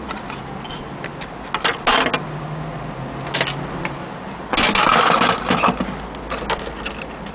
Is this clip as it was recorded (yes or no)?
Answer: yes